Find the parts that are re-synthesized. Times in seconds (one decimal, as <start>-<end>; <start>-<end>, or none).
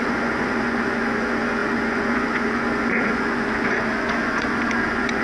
0.0-5.2